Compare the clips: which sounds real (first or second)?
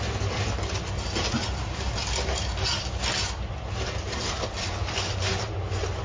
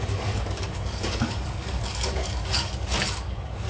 first